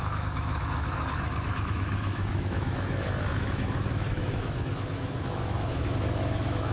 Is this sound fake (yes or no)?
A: yes